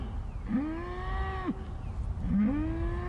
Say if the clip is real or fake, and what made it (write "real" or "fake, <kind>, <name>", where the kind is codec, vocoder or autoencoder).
real